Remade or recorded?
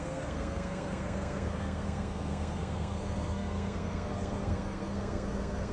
remade